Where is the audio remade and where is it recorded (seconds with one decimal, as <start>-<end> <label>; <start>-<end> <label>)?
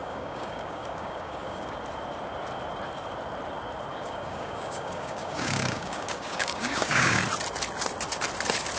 0.0-1.7 remade; 1.7-3.9 recorded; 3.9-7.2 remade; 7.2-8.8 recorded